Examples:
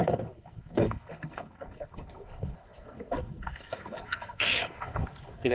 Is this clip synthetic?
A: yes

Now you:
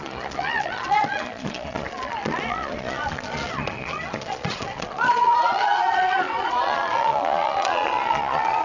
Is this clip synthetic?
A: yes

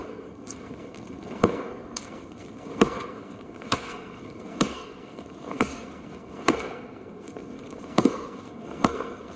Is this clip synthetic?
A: yes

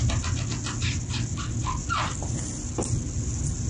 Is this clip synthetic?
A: no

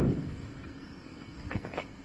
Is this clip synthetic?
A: yes